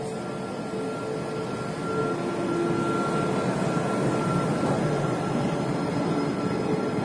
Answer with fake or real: real